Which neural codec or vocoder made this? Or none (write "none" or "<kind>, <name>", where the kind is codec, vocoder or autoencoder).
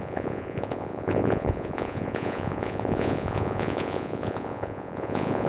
vocoder, Vocos